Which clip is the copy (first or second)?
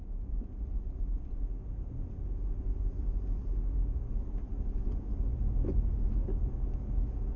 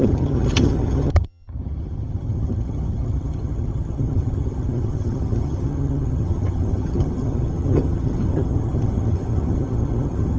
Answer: second